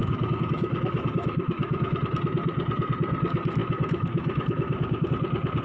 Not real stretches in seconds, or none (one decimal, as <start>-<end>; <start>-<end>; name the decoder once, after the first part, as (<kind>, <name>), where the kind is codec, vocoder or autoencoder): 0.0-2.0 (autoencoder, DAC-VAE); 3.6-5.1

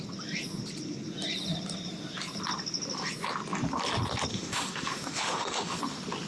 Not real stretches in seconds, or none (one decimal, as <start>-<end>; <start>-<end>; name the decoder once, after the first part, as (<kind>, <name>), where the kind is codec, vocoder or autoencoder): 4.3-5.8 (autoencoder, DAC-VAE)

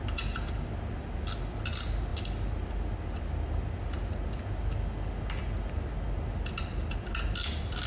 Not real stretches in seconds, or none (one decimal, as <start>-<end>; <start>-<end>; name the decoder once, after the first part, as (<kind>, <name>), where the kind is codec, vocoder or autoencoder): none

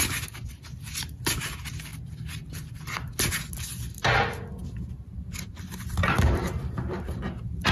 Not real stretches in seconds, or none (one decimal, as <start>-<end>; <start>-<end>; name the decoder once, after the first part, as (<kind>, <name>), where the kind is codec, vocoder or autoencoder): none

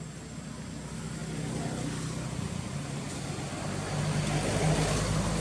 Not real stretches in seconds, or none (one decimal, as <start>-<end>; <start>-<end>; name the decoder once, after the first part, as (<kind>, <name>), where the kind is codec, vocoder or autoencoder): none

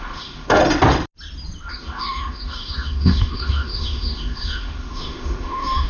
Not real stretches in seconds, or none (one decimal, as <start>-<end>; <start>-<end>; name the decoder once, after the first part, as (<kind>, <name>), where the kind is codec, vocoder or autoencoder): 0.0-0.6 (autoencoder, DAC-VAE); 1.7-5.9

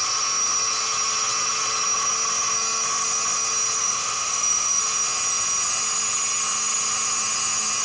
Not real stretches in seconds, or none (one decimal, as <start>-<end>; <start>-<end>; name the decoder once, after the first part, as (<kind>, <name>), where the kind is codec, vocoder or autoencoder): 3.8-4.8 (autoencoder, DAC-VAE)

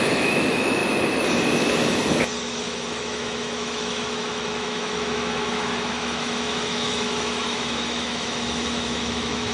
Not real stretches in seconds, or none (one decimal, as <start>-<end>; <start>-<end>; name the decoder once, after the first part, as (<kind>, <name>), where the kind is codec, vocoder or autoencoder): 0.0-0.8 (autoencoder, DAC-VAE); 2.6-9.5